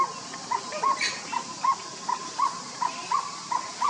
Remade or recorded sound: recorded